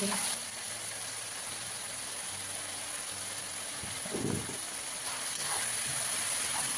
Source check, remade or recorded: recorded